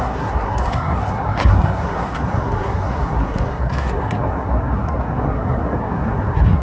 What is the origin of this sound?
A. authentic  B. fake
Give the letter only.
B